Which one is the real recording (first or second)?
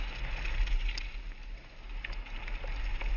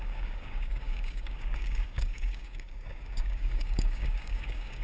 first